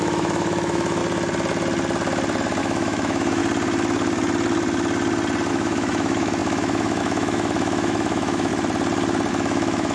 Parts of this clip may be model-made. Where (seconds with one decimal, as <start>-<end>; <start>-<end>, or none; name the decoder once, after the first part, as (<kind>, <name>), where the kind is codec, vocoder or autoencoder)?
0.0-1.0 (autoencoder, DAC-VAE); 2.6-3.4; 5.5-8.5; 9.3-9.9